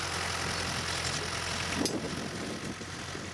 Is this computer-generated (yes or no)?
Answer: no